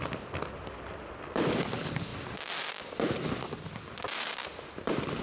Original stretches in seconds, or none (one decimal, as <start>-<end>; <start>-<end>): 0.0-5.2